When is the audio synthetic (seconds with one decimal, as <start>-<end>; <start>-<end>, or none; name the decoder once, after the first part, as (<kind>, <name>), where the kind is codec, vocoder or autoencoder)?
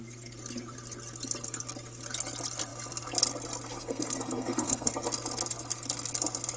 3.7-4.9 (codec, SNAC)